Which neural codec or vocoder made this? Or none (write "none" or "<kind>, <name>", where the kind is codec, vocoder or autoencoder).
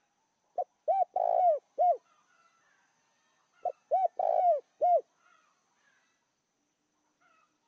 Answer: none